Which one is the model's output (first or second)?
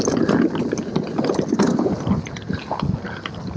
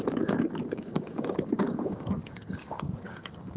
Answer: second